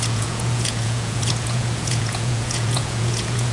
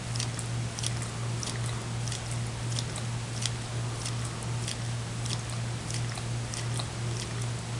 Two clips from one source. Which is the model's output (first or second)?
first